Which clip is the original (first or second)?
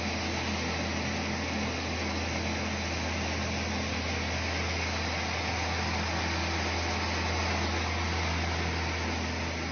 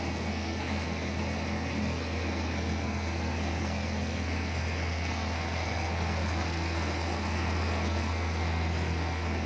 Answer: first